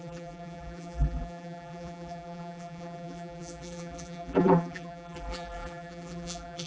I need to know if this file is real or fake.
fake